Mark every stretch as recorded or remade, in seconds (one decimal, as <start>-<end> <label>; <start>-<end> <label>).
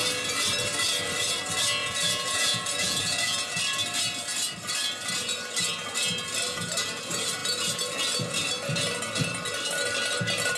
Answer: 0.0-1.8 recorded; 1.8-3.6 remade; 3.6-10.6 recorded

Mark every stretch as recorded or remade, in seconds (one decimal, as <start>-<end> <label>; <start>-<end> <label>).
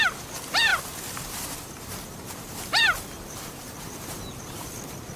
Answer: 0.0-5.2 recorded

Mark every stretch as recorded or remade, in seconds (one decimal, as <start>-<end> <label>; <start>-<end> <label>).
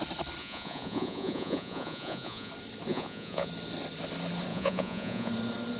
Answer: 0.0-0.4 recorded; 0.4-2.5 remade; 2.5-2.9 recorded; 2.9-3.5 remade; 3.5-4.5 recorded; 4.5-5.3 remade; 5.3-5.8 recorded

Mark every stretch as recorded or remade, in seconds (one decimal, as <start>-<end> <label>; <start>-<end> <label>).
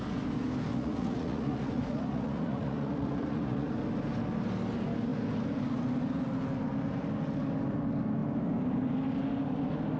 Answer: 0.0-0.7 recorded; 0.7-3.7 remade; 3.7-10.0 recorded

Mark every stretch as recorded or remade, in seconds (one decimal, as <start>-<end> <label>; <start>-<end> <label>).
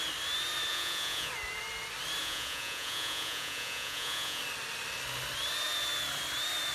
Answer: 0.0-0.7 recorded; 0.7-1.3 remade; 1.3-2.2 recorded; 2.2-4.4 remade; 4.4-6.7 recorded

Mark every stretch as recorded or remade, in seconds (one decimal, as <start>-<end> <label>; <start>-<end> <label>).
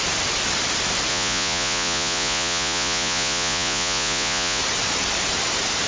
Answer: 0.0-1.1 recorded; 1.1-4.6 remade; 4.6-5.9 recorded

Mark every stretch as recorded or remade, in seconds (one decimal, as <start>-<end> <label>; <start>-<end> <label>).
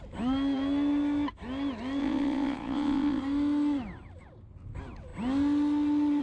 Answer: 0.0-2.0 recorded; 2.0-3.2 remade; 3.2-6.2 recorded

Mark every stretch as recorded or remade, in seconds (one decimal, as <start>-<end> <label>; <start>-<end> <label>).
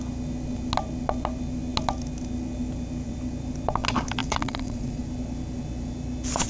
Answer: 0.0-4.2 recorded; 4.2-5.0 remade; 5.0-6.5 recorded